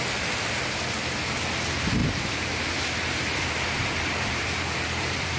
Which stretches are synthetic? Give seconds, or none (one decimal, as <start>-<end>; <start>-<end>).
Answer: 2.0-5.4